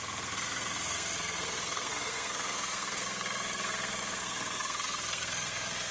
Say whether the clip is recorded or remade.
remade